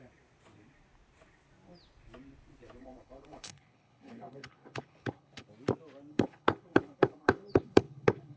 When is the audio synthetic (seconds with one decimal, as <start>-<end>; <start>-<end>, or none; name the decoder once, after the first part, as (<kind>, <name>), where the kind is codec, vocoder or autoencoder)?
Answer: 2.8-5.5 (codec, HILCodec); 6.1-8.4